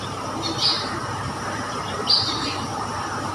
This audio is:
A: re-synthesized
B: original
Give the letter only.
A